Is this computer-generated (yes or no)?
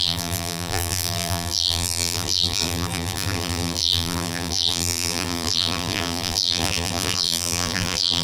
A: yes